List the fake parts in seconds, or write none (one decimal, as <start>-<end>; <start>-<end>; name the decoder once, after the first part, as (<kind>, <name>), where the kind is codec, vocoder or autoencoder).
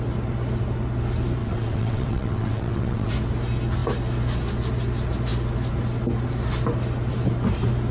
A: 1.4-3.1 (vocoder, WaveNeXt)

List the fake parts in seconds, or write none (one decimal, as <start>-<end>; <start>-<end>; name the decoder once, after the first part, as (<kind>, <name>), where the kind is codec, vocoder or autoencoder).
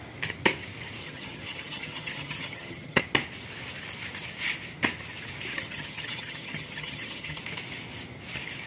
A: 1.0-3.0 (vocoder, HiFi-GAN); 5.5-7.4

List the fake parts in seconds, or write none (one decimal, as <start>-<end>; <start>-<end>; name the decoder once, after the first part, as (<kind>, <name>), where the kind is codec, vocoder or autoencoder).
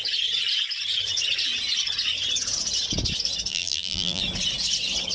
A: 3.5-4.2 (vocoder, BigVGAN v2)